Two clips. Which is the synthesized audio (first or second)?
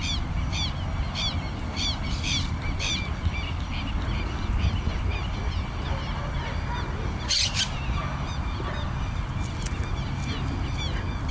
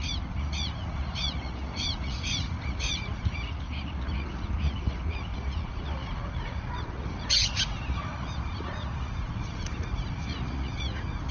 second